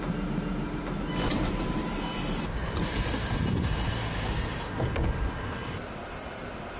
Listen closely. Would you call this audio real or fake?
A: real